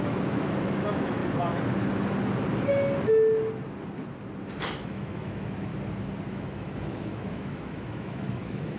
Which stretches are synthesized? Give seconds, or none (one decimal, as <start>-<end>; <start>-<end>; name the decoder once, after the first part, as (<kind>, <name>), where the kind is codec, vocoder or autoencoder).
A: 0.0-1.2 (autoencoder, DAC-VAE); 4.8-5.7; 6.3-8.8